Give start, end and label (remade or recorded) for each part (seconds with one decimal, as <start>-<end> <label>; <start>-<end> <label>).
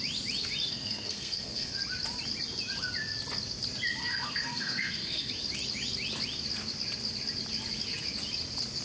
0.0-0.7 recorded; 0.7-1.8 remade; 1.8-4.0 recorded; 4.0-5.3 remade; 5.3-8.8 recorded